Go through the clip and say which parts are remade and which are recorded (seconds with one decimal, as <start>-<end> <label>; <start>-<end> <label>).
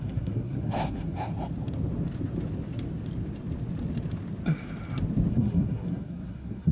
0.0-1.3 remade; 1.3-5.3 recorded; 5.3-6.7 remade